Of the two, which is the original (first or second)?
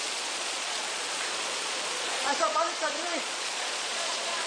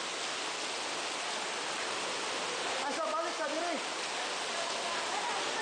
second